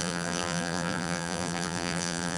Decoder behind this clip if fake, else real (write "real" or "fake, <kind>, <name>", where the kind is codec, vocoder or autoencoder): fake, vocoder, BigVGAN v2